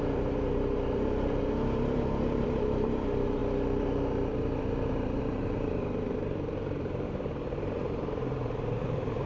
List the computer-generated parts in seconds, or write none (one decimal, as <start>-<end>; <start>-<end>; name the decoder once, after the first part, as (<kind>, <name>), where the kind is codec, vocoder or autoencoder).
0.0-3.4 (vocoder, BigVGAN v2); 5.2-9.3